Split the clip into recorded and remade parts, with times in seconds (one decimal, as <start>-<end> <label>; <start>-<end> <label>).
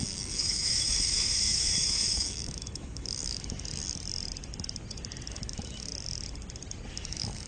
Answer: 0.0-3.7 remade; 3.7-5.3 recorded; 5.3-5.9 remade; 5.9-6.9 recorded; 6.9-7.5 remade